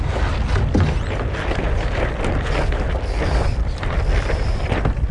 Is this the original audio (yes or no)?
yes